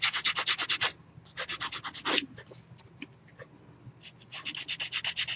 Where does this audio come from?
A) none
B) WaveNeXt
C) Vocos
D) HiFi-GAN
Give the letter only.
A